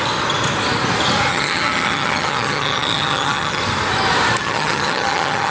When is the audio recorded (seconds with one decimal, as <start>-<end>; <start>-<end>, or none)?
0.0-1.3; 3.6-4.4